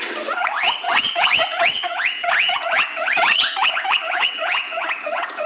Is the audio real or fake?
fake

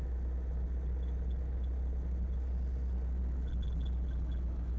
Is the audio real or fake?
real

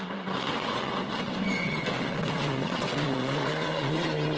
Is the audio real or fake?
fake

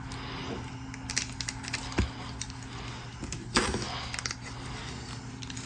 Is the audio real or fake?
real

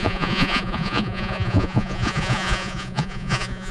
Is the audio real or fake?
fake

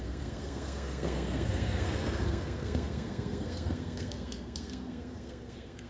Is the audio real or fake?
fake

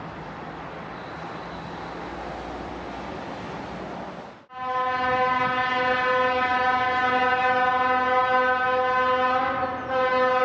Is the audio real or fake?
real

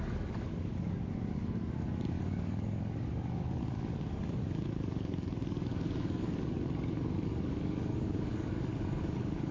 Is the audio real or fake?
fake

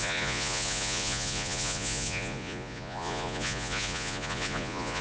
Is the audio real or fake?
fake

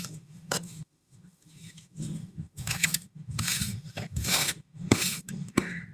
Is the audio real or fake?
fake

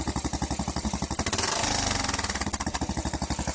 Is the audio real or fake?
real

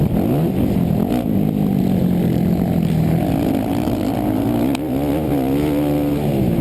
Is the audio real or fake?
real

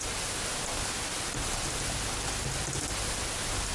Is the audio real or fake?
real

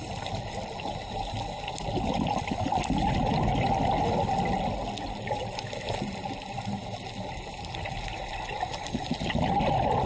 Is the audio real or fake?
real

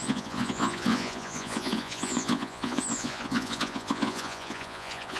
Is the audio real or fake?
fake